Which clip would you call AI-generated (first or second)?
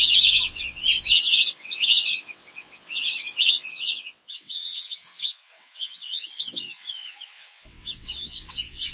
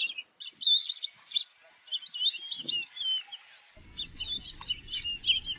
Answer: first